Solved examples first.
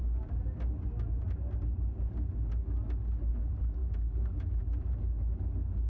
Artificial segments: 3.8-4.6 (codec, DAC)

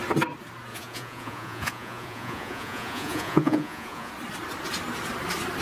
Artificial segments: 0.7-4.1 (vocoder, Vocos)

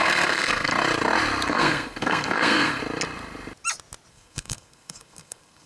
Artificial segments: 0.0-0.7 (codec, SNAC); 1.5-2.8; 4.1-5.7

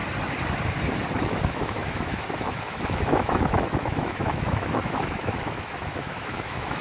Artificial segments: 1.2-6.8 (autoencoder, DAC-VAE)

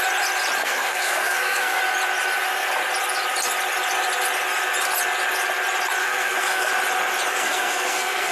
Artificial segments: 0.6-1.8 (codec, SNAC); 6.0-6.7; 7.3-8.3

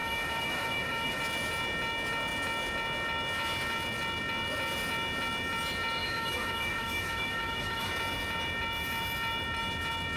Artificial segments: 0.0-1.2 (autoencoder, DAC-VAE); 6.0-7.9